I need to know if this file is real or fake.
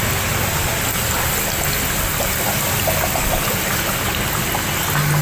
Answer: real